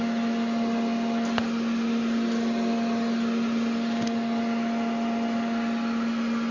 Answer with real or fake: real